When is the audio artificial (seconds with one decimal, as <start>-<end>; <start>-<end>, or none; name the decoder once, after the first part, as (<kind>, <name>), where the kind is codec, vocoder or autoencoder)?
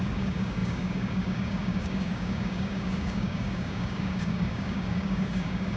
0.0-5.8 (codec, DAC)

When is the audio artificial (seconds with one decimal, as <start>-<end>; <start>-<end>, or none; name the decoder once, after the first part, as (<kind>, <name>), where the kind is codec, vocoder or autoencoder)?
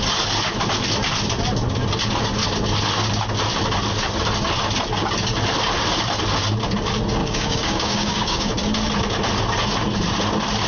7.2-8.5 (codec, DAC)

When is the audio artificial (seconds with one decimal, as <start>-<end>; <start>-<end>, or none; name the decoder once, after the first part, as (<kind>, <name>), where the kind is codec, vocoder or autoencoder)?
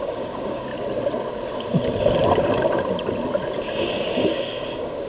0.0-0.7 (codec, DAC); 3.8-5.1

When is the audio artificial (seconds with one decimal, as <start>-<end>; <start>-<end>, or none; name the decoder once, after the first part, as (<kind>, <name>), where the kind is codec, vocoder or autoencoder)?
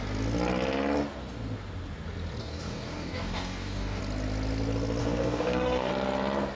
2.4-4.0 (codec, DAC); 5.0-5.9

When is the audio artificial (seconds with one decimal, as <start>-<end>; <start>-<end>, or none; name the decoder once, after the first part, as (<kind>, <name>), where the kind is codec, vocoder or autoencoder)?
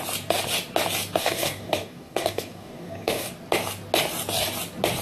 1.2-3.3 (codec, DAC)